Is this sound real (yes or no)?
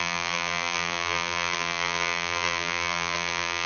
no